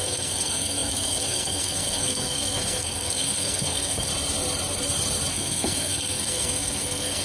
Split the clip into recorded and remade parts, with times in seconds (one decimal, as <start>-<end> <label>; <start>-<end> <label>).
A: 0.0-4.1 remade; 4.1-5.3 recorded; 5.3-7.2 remade